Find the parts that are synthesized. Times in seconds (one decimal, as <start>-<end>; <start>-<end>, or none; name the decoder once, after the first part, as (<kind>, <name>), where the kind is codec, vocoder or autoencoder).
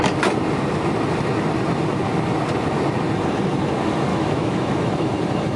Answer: 4.1-5.1 (autoencoder, DAC-VAE)